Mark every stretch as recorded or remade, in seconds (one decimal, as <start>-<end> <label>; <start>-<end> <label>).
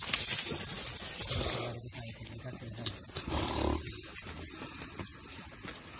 0.0-6.0 recorded